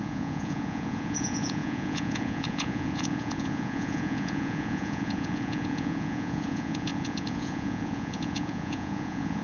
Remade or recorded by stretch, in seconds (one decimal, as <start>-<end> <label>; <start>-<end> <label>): 0.0-9.4 remade